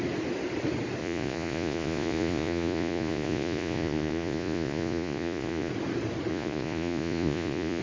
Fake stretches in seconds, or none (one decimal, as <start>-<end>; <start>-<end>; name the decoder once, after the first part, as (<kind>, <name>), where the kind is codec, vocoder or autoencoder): 1.0-5.7 (vocoder, Vocos); 6.3-7.8